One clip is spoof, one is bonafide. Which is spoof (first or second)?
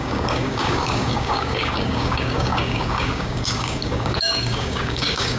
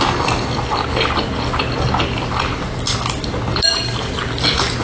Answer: first